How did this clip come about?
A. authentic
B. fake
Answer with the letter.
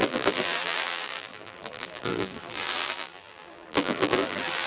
B